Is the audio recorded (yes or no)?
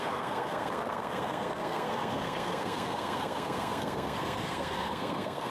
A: no